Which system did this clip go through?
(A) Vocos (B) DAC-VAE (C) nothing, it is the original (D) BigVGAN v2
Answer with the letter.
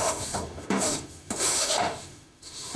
B